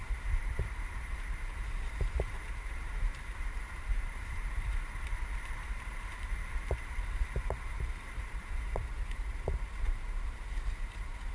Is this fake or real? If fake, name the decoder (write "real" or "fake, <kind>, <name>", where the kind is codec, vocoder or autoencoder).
fake, vocoder, BigVGAN v2